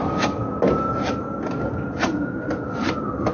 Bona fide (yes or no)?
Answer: yes